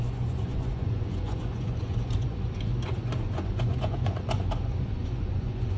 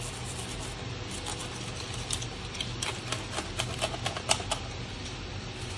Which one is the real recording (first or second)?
second